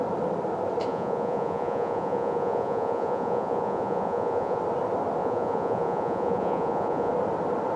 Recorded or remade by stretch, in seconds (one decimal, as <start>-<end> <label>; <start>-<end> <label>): 0.0-0.9 recorded; 0.9-4.6 remade; 4.6-5.2 recorded; 5.2-7.1 remade; 7.1-7.8 recorded